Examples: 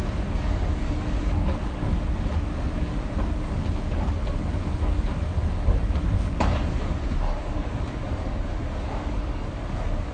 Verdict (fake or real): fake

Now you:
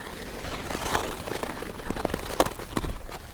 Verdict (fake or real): real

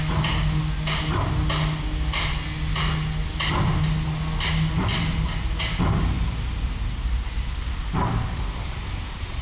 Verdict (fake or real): real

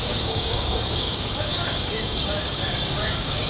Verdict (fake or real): fake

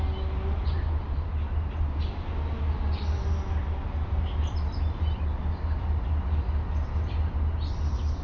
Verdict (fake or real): real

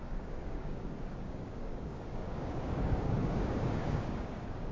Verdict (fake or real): fake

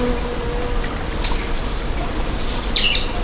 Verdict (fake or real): real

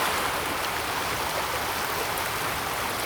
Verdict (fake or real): real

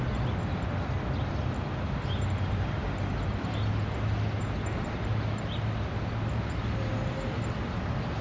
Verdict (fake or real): real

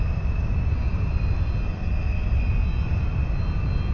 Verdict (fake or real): real